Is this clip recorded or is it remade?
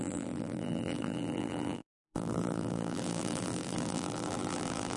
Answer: remade